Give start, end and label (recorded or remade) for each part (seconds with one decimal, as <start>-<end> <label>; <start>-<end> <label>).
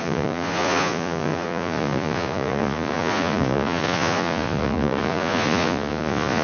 0.0-6.4 remade